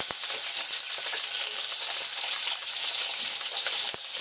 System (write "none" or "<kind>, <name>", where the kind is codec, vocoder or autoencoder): none